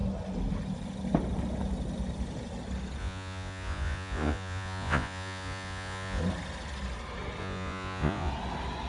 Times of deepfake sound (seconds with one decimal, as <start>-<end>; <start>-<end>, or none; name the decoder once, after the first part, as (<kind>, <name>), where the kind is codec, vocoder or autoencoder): 3.0-6.2 (vocoder, Vocos); 7.4-8.3